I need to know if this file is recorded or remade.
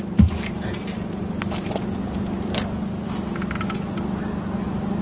recorded